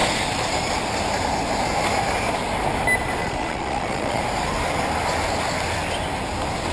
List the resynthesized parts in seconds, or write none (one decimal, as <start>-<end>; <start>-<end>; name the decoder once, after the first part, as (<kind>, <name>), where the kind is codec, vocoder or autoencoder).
3.2-4.2 (vocoder, Vocos)